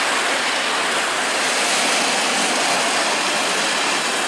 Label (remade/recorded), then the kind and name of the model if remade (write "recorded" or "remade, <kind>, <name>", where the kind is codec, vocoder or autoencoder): recorded